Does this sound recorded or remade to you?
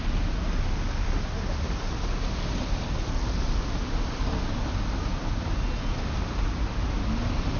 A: recorded